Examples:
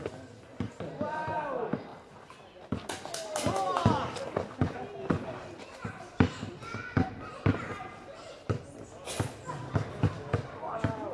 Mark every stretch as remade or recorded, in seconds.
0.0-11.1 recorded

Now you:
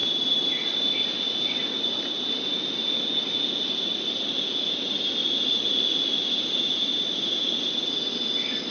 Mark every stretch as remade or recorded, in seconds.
0.0-8.7 recorded

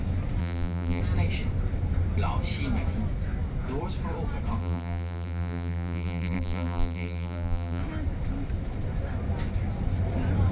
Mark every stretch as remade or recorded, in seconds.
0.0-0.4 recorded; 0.4-1.0 remade; 1.0-4.6 recorded; 4.6-7.8 remade; 7.8-10.5 recorded

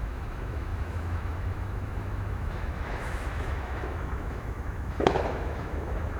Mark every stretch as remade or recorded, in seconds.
0.0-6.2 remade

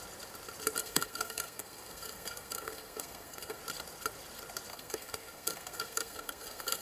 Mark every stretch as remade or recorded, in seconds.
0.0-0.8 recorded; 0.8-3.6 remade; 3.6-4.7 recorded; 4.7-6.8 remade

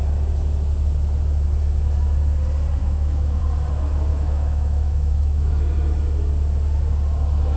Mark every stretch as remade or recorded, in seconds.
0.0-2.8 recorded; 2.8-3.4 remade; 3.4-4.1 recorded; 4.1-5.6 remade; 5.6-7.6 recorded

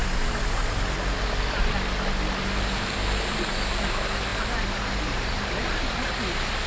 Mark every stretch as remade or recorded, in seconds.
0.0-0.7 remade; 0.7-4.3 recorded; 4.3-6.2 remade; 6.2-6.7 recorded